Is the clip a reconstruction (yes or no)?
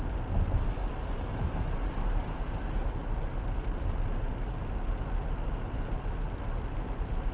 no